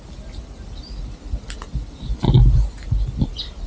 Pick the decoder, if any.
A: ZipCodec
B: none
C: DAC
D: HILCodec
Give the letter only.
B